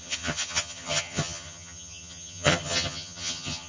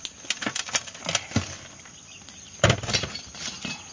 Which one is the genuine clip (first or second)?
second